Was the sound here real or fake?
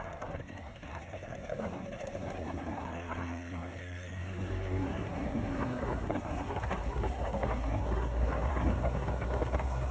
fake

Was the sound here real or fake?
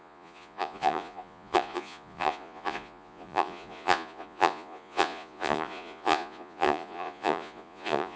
fake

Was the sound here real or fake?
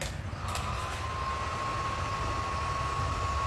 real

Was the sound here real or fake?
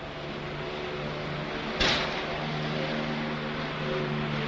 real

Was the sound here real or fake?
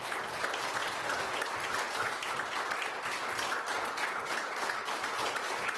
real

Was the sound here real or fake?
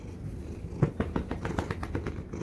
real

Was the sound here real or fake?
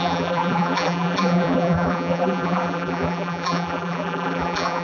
fake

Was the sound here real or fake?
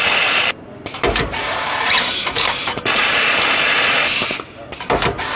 real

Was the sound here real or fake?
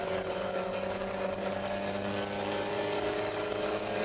fake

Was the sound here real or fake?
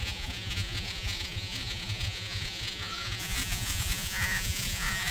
fake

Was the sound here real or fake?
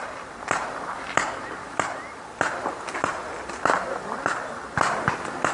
fake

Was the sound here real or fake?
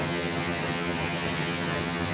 fake